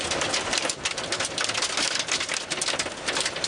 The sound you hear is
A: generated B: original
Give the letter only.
B